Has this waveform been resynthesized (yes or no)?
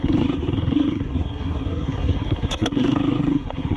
yes